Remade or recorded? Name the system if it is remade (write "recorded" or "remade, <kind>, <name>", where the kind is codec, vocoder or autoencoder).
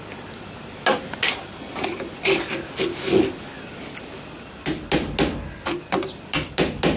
recorded